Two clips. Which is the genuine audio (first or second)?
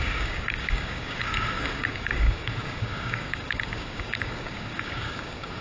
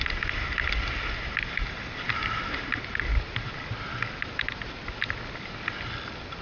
second